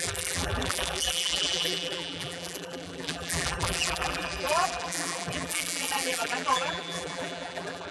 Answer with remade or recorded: remade